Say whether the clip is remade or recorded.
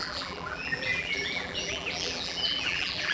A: remade